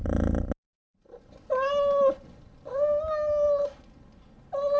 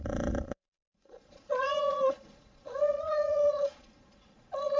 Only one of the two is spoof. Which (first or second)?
second